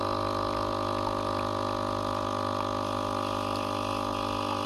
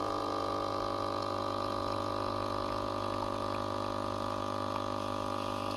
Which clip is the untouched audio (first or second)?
first